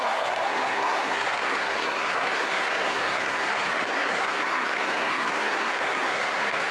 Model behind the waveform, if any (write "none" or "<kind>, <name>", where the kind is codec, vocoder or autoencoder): codec, SNAC